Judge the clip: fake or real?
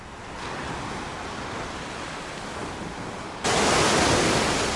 real